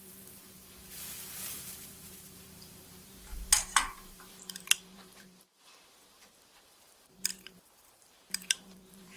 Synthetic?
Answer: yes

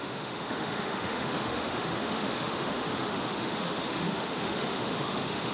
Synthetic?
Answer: yes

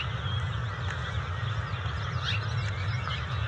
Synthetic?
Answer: no